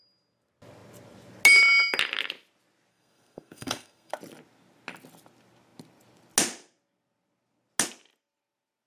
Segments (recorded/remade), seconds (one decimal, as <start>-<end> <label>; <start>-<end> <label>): 0.0-2.9 recorded; 2.9-4.1 remade; 4.1-8.9 recorded

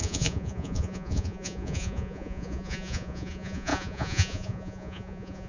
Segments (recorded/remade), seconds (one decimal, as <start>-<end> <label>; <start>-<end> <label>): 0.0-5.5 remade

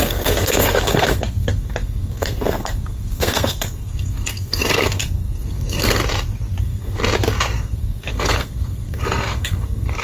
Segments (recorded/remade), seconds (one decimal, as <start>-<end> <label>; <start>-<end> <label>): 0.0-6.0 remade; 6.0-6.6 recorded; 6.6-7.0 remade; 7.0-7.6 recorded; 7.6-10.0 remade

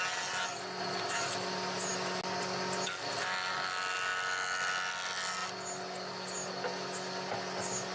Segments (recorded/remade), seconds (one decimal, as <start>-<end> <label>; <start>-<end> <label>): 0.0-7.9 recorded

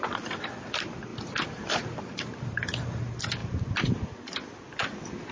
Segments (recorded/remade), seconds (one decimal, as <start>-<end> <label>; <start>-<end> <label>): 0.0-5.3 remade

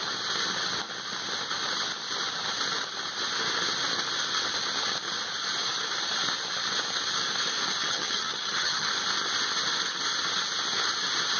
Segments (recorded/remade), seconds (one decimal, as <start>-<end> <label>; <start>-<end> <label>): 0.0-7.8 recorded; 7.8-8.9 remade; 8.9-11.4 recorded

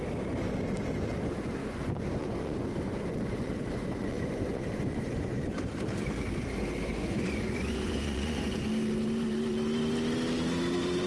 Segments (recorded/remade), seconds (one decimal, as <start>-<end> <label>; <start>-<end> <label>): 0.0-1.6 recorded; 1.6-5.5 remade; 5.5-6.9 recorded; 6.9-8.6 remade; 8.6-11.1 recorded